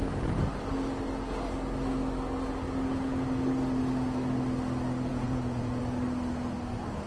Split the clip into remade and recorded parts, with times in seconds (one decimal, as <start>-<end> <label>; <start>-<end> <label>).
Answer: 0.0-5.1 recorded; 5.1-5.8 remade; 5.8-7.1 recorded